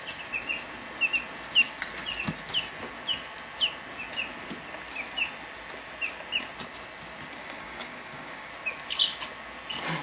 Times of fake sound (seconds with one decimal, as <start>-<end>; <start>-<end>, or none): 7.4-8.5